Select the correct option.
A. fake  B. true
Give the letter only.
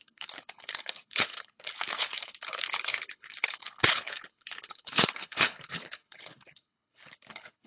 A